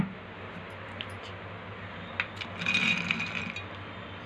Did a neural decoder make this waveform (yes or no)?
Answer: no